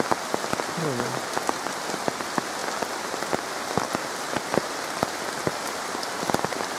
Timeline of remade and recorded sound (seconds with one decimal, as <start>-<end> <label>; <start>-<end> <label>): 0.0-6.8 recorded